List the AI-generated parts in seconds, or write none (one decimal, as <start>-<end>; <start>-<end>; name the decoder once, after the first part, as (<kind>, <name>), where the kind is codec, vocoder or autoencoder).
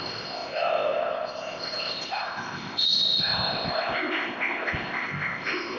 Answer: 0.0-5.8 (codec, ZipCodec)